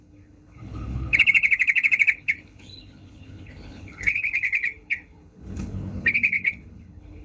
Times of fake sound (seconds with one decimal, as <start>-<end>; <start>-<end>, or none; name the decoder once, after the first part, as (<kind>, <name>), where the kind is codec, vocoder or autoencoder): 0.0-7.2 (codec, HILCodec)